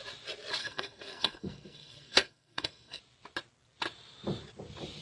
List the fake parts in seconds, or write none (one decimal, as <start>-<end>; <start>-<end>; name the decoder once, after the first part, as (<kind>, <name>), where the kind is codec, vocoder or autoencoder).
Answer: 0.6-3.0 (codec, SNAC)

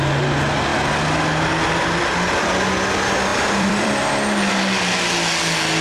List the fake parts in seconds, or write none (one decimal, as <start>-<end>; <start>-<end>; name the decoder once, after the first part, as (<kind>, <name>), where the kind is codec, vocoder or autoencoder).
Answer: 3.3-4.1 (vocoder, BigVGAN v2)

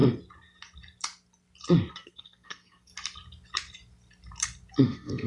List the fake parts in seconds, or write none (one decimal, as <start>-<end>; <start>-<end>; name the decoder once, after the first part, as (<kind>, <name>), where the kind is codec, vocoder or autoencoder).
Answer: 1.9-2.9 (codec, SNAC); 4.8-5.3

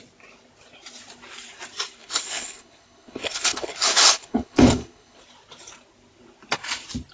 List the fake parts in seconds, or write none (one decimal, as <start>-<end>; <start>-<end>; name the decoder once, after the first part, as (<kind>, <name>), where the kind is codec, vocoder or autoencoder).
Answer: 2.0-5.2 (codec, HILCodec)

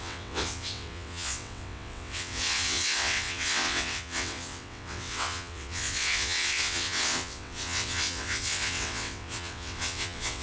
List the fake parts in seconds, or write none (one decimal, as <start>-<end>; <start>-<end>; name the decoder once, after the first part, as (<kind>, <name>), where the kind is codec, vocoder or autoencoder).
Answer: 0.0-10.4 (vocoder, WaveNeXt)

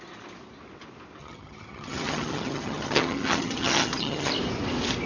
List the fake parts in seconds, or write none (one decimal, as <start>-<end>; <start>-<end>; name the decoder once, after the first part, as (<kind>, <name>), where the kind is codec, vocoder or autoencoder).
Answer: 1.2-4.3 (vocoder, HiFi-GAN)